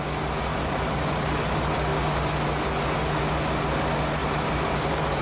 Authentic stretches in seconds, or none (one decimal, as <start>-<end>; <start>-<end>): 0.0-0.5; 1.1-4.2